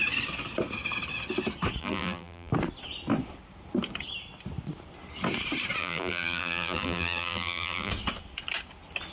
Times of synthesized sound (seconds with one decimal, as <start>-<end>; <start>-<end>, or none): 1.8-2.5; 5.8-7.9